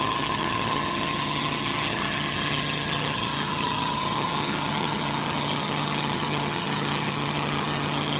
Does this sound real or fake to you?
fake